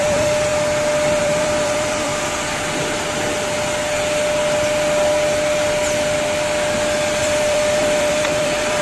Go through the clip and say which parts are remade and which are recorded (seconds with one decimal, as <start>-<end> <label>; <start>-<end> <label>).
0.0-0.5 remade; 0.5-1.2 recorded; 1.2-2.1 remade; 2.1-7.2 recorded; 7.2-8.8 remade